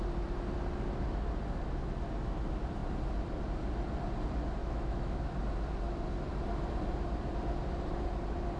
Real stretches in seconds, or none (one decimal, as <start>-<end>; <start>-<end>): 0.0-4.6; 5.4-8.6